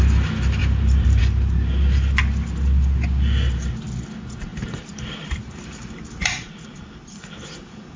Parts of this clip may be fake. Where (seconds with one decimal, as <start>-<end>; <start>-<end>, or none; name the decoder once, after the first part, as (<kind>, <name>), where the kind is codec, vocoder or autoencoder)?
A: 0.6-1.2 (vocoder, BigVGAN v2); 4.5-8.0